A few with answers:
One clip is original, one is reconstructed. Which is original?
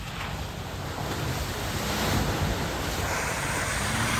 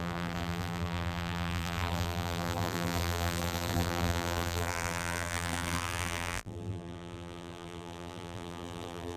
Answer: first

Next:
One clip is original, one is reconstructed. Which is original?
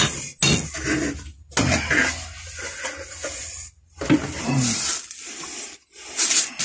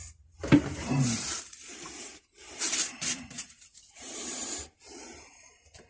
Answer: first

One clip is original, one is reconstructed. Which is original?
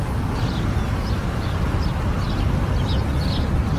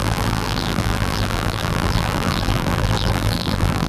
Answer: first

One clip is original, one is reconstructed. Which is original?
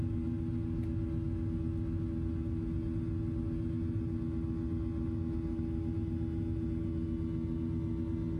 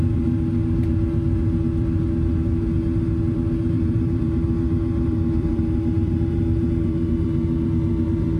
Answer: first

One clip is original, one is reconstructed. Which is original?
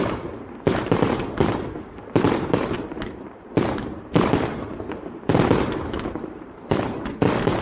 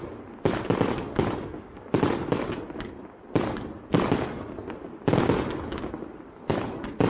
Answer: second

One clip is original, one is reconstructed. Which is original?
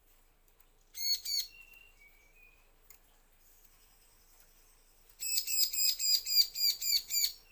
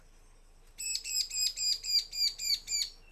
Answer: second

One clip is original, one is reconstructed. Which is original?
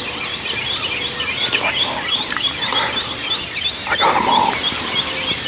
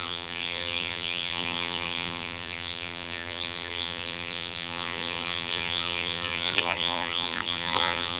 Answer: first